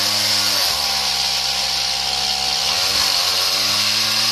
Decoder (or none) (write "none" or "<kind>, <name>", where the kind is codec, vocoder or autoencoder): none